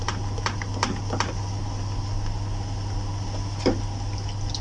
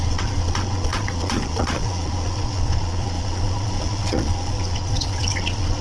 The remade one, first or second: second